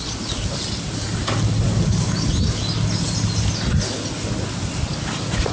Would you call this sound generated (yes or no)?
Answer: no